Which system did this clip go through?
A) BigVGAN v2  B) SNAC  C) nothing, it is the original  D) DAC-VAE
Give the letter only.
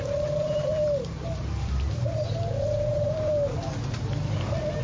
A